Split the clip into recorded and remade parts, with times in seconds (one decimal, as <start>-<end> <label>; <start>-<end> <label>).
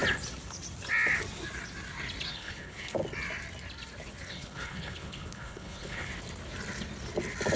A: 0.0-2.3 recorded; 2.3-3.0 remade; 3.0-4.3 recorded; 4.3-6.1 remade; 6.1-7.6 recorded